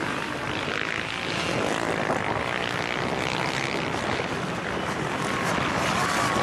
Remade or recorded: recorded